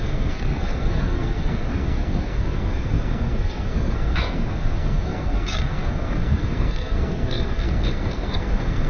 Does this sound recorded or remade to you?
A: remade